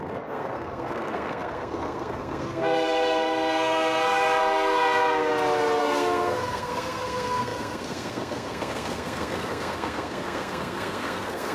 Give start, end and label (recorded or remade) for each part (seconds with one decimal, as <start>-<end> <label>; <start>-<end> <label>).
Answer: 0.0-5.3 remade; 5.3-5.8 recorded; 5.8-11.5 remade